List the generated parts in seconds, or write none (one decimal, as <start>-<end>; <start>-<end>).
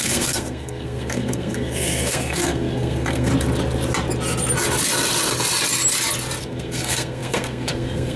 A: 0.0-3.3; 6.4-8.2